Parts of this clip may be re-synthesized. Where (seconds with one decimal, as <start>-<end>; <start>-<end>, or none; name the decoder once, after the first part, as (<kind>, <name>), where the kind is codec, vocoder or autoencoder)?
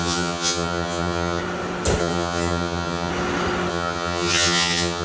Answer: 0.0-1.4 (vocoder, HiFi-GAN); 2.0-3.1; 3.7-5.0